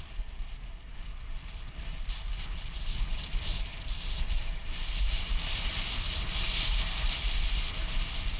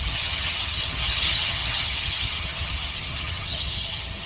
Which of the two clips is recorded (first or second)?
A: first